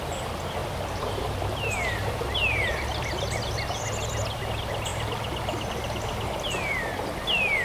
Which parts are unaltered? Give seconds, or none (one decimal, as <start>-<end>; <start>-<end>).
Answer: 0.0-0.6; 3.4-7.6

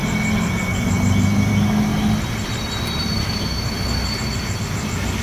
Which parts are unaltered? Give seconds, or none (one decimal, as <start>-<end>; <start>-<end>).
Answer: 0.0-5.2

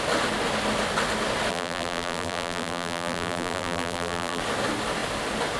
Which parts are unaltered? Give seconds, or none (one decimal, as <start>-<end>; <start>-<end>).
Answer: 0.0-1.5; 4.4-5.6

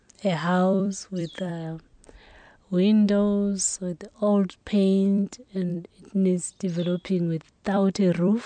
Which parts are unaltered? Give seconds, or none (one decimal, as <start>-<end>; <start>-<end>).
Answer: 1.5-4.6

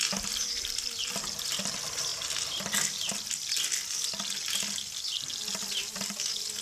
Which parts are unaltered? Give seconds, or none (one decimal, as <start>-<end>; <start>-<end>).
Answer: 0.0-6.6

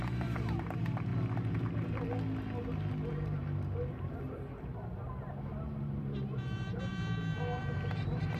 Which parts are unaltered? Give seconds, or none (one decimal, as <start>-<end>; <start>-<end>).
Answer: 1.1-3.1; 4.7-5.5

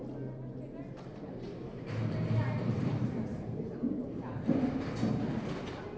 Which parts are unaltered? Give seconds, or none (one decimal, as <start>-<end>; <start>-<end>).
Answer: 0.0-1.1; 4.7-6.0